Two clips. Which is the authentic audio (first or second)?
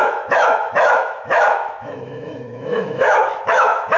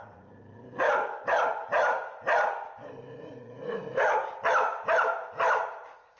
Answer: second